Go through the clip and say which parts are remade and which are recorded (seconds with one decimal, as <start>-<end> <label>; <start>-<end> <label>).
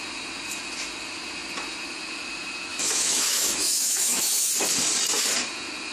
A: 0.0-2.7 recorded; 2.7-4.5 remade; 4.5-5.9 recorded